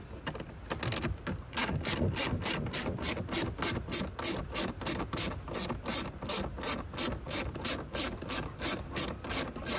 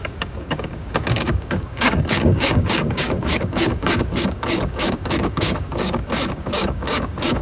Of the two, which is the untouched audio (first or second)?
first